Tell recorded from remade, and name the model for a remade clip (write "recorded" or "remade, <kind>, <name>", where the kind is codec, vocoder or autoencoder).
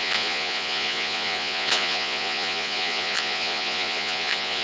remade, vocoder, Vocos